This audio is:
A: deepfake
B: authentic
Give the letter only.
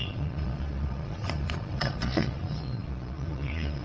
A